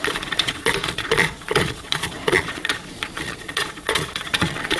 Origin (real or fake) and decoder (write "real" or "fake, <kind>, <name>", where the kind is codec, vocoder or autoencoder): fake, vocoder, Vocos